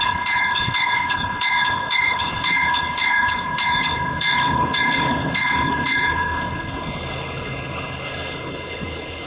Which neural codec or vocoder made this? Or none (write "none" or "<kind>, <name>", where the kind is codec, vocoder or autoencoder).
codec, HILCodec